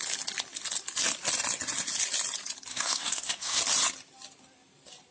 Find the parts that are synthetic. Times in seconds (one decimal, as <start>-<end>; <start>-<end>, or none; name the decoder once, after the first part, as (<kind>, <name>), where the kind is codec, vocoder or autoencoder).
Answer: 2.7-3.6 (codec, SNAC)